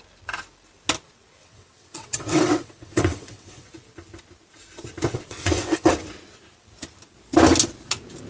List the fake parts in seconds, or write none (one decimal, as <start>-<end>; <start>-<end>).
1.4-3.7; 5.1-5.9